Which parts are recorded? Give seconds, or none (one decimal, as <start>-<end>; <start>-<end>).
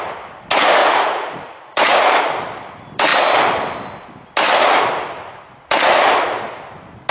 0.0-0.8; 2.2-7.1